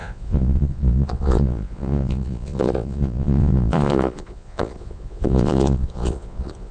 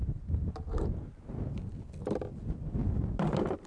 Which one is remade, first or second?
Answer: first